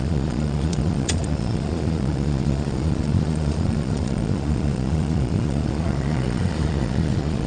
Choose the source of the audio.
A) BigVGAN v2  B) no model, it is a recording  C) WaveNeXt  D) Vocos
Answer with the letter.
D